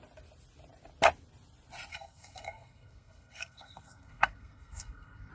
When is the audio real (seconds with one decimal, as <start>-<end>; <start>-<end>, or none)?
0.0-1.9